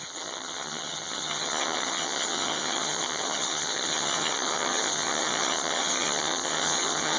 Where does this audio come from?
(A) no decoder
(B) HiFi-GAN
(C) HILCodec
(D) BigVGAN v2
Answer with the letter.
B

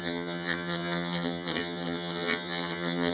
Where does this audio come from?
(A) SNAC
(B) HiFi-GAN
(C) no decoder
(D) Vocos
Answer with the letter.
B